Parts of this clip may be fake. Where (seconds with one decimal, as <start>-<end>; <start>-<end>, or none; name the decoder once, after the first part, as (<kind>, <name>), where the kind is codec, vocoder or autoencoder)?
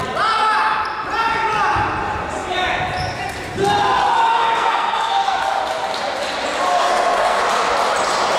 4.3-5.6 (codec, SNAC); 6.7-7.4